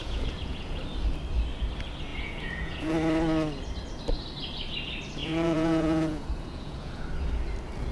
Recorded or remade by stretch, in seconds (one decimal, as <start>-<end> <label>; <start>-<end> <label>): 0.0-0.8 remade; 0.8-2.1 recorded; 2.1-2.9 remade; 2.9-5.2 recorded; 5.2-7.0 remade; 7.0-7.9 recorded